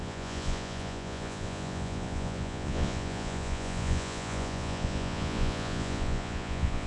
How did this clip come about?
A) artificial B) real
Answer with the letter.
A